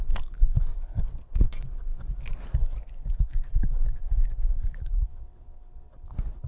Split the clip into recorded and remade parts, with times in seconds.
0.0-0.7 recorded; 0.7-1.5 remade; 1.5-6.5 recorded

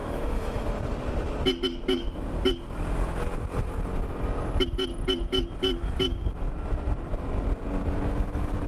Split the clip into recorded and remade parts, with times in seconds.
0.0-0.6 remade; 0.6-8.7 recorded

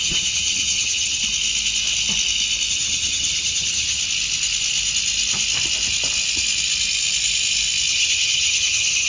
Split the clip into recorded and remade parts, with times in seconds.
0.0-1.2 remade; 1.2-2.7 recorded; 2.7-4.0 remade; 4.0-7.9 recorded; 7.9-9.1 remade

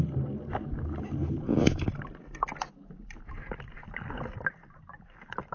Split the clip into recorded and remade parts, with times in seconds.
0.0-5.5 recorded

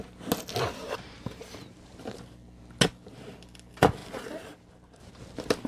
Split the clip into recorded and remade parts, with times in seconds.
0.0-0.8 recorded; 0.8-2.0 remade; 2.0-4.0 recorded; 4.0-5.1 remade; 5.1-5.7 recorded

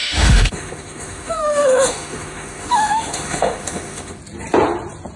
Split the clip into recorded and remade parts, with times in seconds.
0.0-4.2 remade; 4.2-5.2 recorded

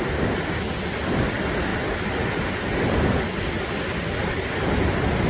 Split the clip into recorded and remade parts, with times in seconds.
0.0-5.3 recorded